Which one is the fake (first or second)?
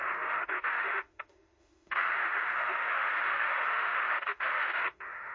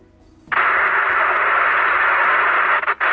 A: first